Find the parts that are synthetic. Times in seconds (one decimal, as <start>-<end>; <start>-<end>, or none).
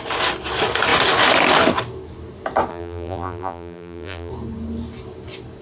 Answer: 2.7-4.3